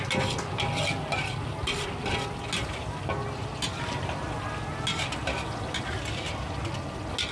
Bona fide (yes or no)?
yes